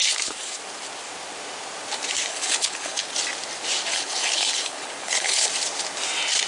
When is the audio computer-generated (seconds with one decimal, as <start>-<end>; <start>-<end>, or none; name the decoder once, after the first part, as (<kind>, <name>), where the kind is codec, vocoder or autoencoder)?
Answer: 0.0-0.6 (codec, HILCodec); 2.3-3.0; 3.9-5.5